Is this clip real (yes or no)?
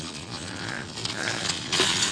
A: no